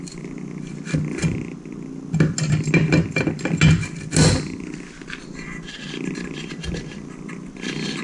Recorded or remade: recorded